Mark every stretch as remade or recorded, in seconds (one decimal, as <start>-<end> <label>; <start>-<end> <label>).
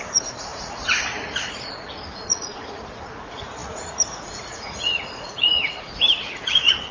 0.0-6.9 remade